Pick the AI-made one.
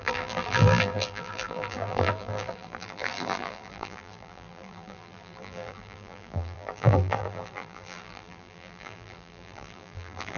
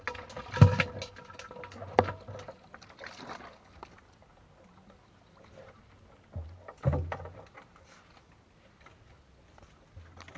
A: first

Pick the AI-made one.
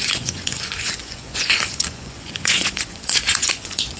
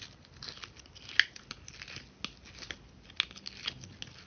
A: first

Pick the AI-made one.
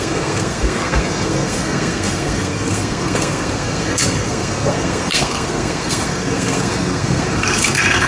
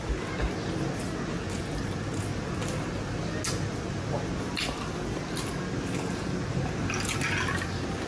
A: first